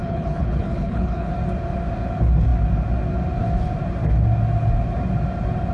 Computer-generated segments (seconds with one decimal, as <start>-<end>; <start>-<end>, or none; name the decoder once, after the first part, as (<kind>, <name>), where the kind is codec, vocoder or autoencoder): 0.0-1.3 (codec, HILCodec)